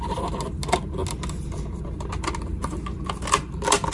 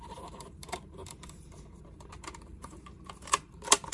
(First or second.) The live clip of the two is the first